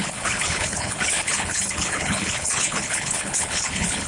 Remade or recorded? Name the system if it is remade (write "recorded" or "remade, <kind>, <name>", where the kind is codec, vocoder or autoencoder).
remade, codec, HILCodec